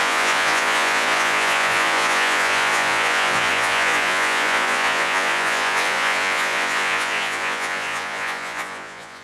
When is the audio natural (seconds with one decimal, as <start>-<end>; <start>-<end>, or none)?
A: none